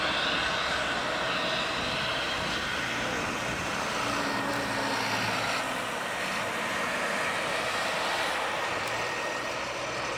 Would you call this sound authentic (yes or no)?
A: yes